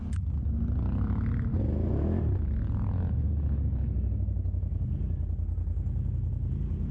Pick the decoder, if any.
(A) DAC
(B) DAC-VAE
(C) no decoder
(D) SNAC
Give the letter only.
C